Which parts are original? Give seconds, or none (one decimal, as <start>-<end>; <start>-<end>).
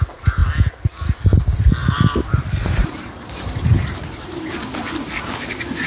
0.0-1.8; 4.6-5.9